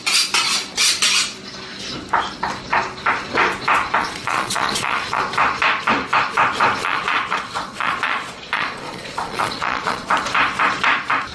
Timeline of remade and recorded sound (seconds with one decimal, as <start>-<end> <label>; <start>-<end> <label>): 0.0-4.0 recorded; 4.0-5.2 remade; 5.2-6.8 recorded; 6.8-10.1 remade; 10.1-11.3 recorded